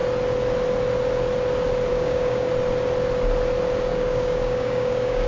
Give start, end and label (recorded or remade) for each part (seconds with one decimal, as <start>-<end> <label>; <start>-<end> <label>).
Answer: 0.0-1.9 recorded; 1.9-2.5 remade; 2.5-3.9 recorded; 3.9-5.3 remade